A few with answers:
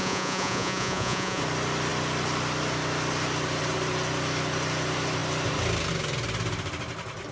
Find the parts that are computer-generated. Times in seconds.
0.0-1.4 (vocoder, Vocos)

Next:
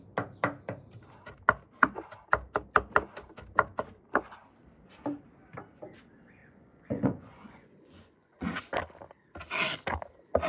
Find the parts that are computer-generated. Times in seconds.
6.4-8.7 (vocoder, Vocos)

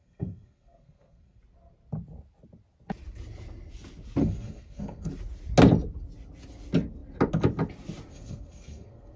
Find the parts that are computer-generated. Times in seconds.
0.0-1.4 (codec, SNAC); 4.2-5.1; 8.1-9.2